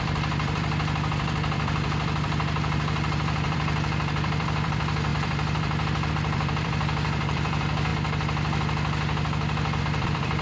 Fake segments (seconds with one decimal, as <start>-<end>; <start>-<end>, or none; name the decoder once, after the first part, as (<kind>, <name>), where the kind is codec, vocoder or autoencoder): 0.0-7.9 (vocoder, BigVGAN v2); 9.8-10.4